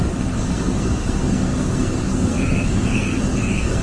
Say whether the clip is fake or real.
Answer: fake